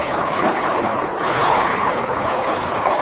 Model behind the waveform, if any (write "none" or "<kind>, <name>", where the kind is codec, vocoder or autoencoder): codec, HILCodec